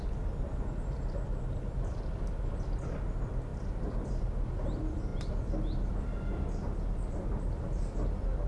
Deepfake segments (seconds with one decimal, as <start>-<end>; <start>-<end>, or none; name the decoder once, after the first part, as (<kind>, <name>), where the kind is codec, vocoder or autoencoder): 3.5-4.3 (vocoder, BigVGAN v2)